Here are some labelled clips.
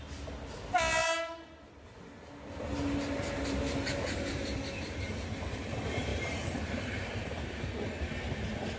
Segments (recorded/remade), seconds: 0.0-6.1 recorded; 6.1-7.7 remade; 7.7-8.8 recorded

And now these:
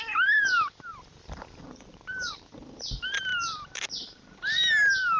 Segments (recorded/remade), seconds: 0.0-0.9 recorded; 0.9-2.3 remade; 2.3-5.2 recorded

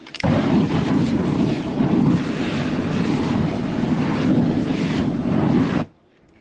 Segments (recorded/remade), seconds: 0.0-2.1 remade; 2.1-4.7 recorded; 4.7-5.7 remade; 5.7-6.4 recorded